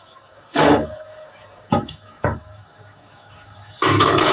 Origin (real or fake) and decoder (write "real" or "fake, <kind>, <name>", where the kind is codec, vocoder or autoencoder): fake, codec, DAC